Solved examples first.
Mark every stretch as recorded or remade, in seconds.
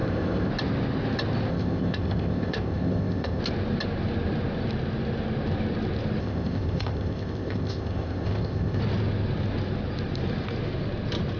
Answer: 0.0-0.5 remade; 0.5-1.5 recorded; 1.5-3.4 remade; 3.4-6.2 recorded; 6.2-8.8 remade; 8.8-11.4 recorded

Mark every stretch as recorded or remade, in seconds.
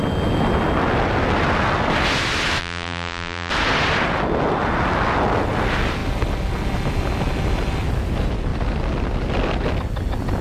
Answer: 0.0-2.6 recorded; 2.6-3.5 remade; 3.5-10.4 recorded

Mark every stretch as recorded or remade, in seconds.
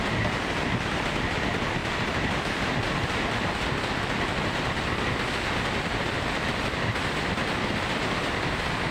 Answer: 0.0-8.9 recorded